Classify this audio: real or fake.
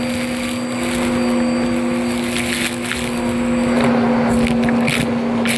real